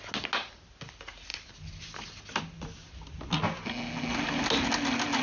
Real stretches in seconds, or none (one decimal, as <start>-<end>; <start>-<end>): 0.0-5.2